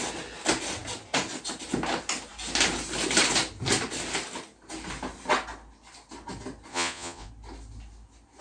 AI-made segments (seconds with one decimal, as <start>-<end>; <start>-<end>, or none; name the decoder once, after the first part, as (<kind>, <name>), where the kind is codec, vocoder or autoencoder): 6.7-7.3 (vocoder, Vocos)